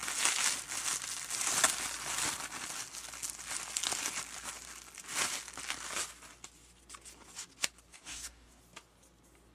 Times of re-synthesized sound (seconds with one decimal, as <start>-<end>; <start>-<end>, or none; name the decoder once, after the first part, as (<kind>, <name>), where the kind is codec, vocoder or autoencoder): 7.9-8.6 (codec, DAC)